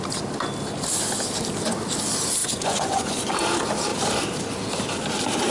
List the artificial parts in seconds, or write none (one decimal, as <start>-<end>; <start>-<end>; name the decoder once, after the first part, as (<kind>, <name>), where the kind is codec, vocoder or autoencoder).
2.4-3.3 (vocoder, Vocos)